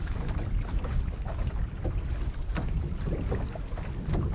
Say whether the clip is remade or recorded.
recorded